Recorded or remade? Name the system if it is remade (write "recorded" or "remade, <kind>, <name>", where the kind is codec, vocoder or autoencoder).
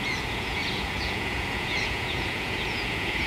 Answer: remade, vocoder, Vocos